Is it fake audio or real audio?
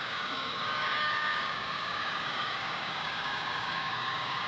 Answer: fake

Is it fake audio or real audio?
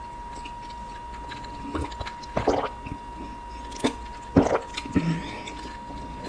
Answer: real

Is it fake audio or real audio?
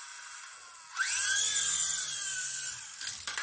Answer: real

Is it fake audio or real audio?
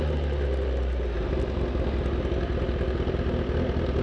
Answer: real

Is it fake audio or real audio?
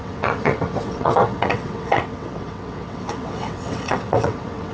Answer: fake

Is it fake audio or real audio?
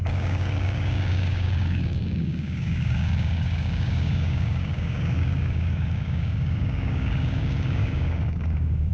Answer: fake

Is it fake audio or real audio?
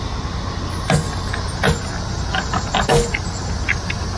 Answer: real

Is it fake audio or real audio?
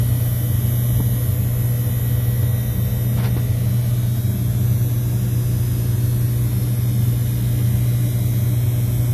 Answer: real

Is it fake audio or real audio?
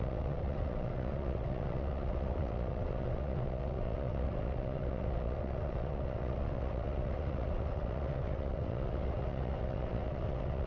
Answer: fake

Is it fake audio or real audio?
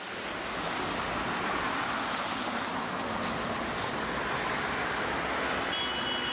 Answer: real